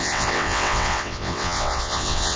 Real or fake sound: fake